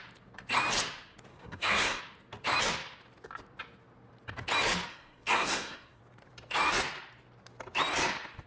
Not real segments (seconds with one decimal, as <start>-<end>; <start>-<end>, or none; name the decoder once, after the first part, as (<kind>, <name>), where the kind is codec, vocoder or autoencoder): 1.3-2.0 (codec, SNAC); 4.9-6.0

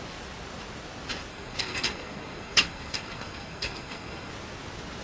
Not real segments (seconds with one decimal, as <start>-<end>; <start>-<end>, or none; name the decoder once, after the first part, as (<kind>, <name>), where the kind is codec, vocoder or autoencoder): 1.3-4.3 (codec, SNAC)

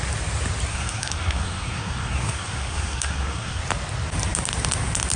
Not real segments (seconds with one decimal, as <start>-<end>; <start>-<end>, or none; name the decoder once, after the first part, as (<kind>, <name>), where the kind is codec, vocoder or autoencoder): 0.7-3.6 (codec, SNAC)

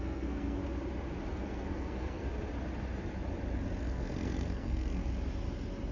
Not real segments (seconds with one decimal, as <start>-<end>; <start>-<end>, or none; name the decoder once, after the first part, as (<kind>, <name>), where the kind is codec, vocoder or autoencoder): 0.0-0.6 (codec, SNAC); 1.3-2.3; 3.8-5.0

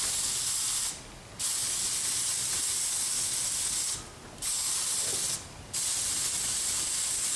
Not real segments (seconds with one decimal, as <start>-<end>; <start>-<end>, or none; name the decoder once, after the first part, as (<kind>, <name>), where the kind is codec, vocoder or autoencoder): none

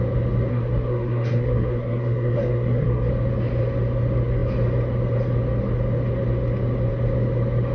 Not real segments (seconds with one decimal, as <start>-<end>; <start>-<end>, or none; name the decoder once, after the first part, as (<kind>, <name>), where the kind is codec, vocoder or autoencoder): 0.5-3.1 (codec, SNAC)

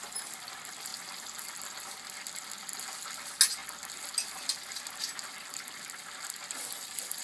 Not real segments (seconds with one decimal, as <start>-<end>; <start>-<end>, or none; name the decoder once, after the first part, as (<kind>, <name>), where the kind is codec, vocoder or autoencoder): none

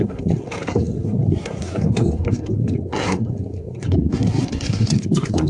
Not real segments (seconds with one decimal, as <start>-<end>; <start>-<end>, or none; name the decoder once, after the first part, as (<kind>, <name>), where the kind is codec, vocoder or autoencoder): 0.0-5.5 (codec, SNAC)